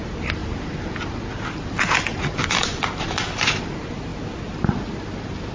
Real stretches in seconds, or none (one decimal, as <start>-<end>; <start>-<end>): 0.0-5.5